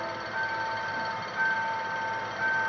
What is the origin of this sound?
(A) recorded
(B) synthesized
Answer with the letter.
B